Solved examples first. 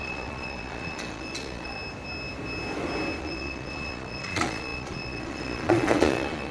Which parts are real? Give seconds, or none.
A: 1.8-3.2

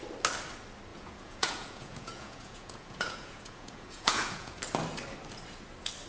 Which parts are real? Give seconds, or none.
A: 0.0-0.9; 4.6-6.1